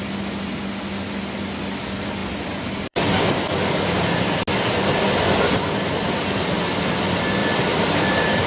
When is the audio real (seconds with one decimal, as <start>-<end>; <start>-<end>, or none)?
0.0-7.4